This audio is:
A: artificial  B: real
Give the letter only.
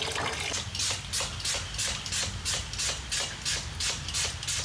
B